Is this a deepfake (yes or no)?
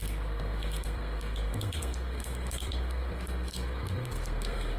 yes